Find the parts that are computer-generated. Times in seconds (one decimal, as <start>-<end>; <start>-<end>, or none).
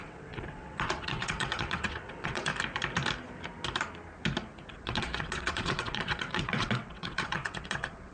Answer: 0.0-2.5; 4.7-8.1